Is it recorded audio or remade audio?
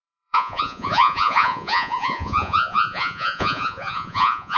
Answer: remade